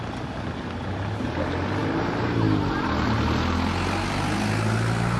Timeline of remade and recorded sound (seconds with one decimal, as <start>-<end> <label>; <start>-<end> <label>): 0.0-5.2 recorded